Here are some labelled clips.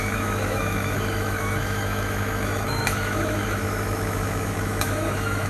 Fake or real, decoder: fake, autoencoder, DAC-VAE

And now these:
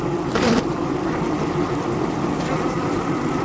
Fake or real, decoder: fake, vocoder, BigVGAN v2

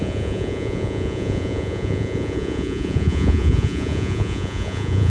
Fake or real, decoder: fake, vocoder, Vocos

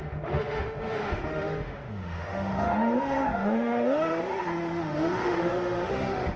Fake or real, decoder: fake, autoencoder, DAC-VAE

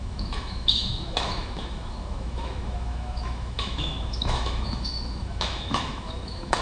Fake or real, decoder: fake, autoencoder, DAC-VAE